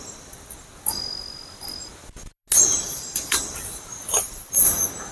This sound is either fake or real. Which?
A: real